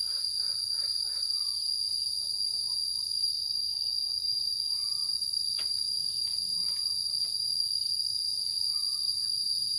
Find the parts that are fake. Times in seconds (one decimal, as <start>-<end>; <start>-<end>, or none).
2.8-3.4; 5.0-5.5; 7.5-8.3